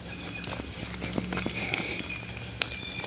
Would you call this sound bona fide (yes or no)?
yes